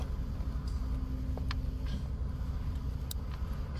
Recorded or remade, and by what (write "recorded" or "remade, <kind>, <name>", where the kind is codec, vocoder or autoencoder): recorded